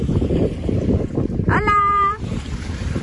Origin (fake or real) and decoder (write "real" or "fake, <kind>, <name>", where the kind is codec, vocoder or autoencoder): fake, vocoder, BigVGAN v2